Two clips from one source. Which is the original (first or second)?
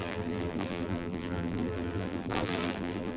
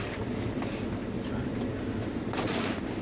second